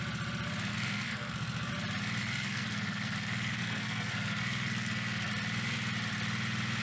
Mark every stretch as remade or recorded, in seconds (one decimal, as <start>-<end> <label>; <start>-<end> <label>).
0.0-0.7 recorded; 0.7-1.7 remade; 1.7-2.2 recorded; 2.2-5.3 remade; 5.3-6.8 recorded